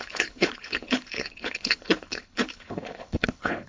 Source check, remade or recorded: remade